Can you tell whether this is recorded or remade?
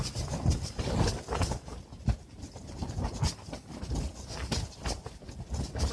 recorded